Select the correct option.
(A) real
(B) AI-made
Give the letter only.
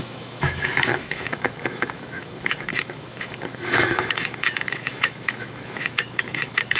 B